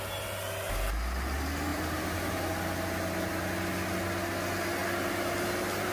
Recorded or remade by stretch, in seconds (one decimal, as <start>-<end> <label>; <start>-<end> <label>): 0.0-1.7 recorded; 1.7-2.4 remade; 2.4-5.9 recorded